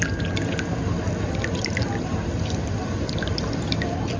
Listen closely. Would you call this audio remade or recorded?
recorded